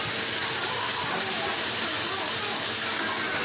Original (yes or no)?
yes